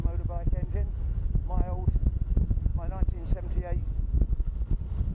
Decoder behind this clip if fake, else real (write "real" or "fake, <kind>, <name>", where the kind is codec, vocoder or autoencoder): real